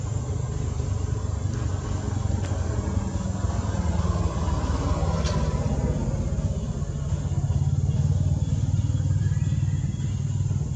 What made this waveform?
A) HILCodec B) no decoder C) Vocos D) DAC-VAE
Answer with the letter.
B